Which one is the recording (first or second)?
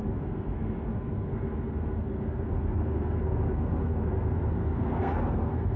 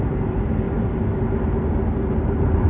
second